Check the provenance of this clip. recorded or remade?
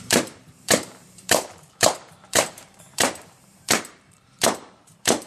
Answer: remade